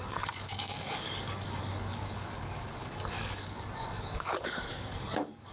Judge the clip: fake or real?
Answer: fake